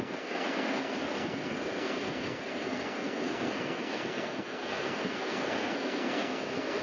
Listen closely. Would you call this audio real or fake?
fake